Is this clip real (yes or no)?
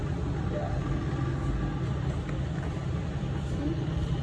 yes